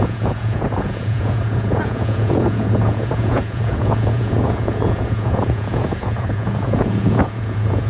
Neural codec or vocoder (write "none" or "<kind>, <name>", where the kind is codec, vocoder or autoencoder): vocoder, Vocos